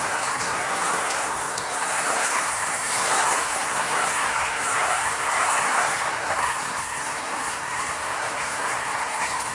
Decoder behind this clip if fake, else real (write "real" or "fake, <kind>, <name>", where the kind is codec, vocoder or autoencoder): fake, codec, SNAC